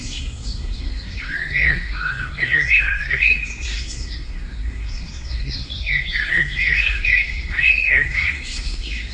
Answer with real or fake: fake